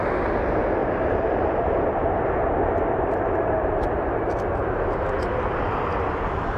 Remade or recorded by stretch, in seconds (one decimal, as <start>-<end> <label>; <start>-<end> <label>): 0.0-0.8 recorded; 0.8-3.9 remade; 3.9-6.6 recorded